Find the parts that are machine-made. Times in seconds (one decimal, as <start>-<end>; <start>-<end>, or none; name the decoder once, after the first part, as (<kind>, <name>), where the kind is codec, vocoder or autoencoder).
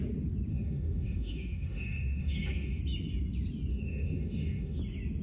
0.5-2.8 (autoencoder, DAC-VAE); 3.7-4.8